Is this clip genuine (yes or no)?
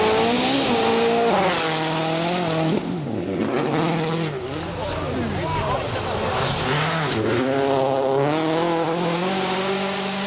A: yes